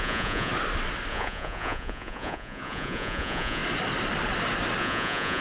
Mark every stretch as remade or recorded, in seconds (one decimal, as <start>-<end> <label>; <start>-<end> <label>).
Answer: 0.0-0.5 remade; 0.5-1.1 recorded; 1.1-3.6 remade; 3.6-4.8 recorded; 4.8-5.4 remade